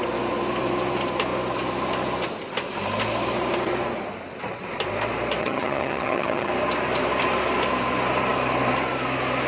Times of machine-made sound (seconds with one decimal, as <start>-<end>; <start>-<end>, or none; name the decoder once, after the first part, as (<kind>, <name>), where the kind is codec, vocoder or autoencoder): 5.4-6.5 (vocoder, HiFi-GAN)